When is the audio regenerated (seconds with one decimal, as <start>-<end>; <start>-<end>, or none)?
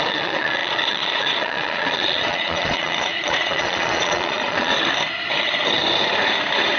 0.0-4.7